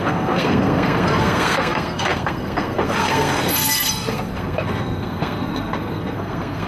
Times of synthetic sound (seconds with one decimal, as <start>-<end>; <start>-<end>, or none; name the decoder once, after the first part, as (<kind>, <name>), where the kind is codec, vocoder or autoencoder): 0.0-6.7 (codec, SNAC)